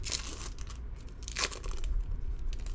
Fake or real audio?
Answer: real